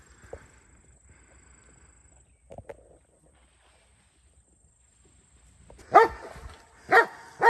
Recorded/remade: recorded